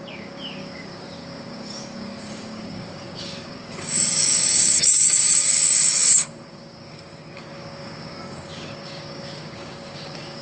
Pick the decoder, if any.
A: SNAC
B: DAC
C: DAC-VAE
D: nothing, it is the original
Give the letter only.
B